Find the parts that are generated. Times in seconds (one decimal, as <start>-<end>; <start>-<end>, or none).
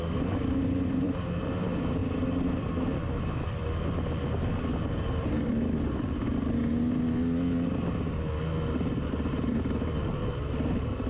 0.0-2.0; 5.0-6.2; 9.1-10.2; 10.7-11.1